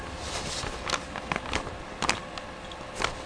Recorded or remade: recorded